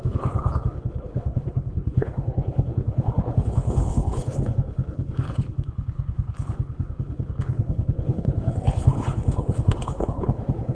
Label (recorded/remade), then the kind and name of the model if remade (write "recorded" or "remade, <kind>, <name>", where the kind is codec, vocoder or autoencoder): remade, codec, HILCodec